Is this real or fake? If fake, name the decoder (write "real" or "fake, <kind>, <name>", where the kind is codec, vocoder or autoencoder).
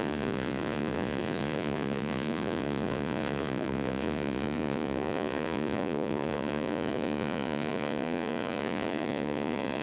fake, vocoder, Vocos